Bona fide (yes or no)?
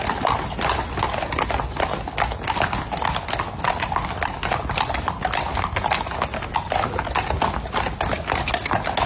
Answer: yes